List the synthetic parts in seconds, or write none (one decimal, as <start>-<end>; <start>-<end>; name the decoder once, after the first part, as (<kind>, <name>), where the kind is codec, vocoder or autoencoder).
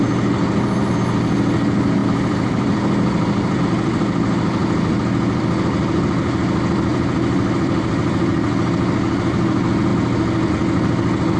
2.0-3.6 (vocoder, BigVGAN v2); 6.9-8.7